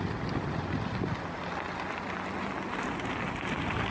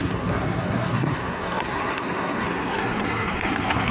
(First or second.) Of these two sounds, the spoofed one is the second